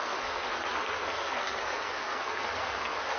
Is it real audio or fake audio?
fake